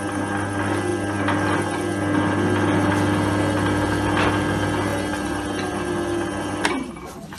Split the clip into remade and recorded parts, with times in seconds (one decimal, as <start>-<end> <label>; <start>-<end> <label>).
0.0-7.4 recorded